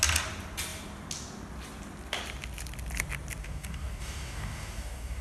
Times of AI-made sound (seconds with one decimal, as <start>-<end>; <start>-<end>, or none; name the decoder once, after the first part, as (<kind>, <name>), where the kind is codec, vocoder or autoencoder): 3.4-5.2 (codec, DAC)

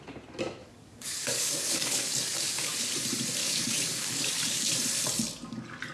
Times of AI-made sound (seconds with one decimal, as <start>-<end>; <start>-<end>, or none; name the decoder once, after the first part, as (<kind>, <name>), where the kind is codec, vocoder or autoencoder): 0.6-2.8 (codec, DAC); 3.4-4.7

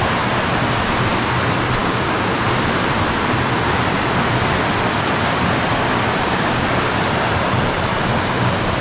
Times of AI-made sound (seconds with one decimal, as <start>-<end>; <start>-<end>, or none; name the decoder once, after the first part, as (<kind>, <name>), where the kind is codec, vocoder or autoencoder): 1.8-2.3 (codec, DAC)

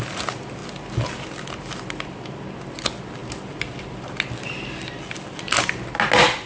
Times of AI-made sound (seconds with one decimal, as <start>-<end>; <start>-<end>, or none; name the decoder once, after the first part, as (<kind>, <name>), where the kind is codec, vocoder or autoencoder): none

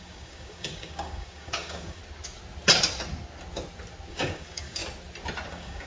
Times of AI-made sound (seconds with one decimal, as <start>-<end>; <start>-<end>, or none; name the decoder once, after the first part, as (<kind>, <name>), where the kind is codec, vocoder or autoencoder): 0.0-2.0 (codec, DAC); 4.1-4.8; 5.5-5.9

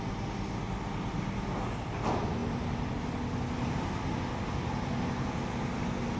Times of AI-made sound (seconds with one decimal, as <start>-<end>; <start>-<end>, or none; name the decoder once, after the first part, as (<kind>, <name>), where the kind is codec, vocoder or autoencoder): none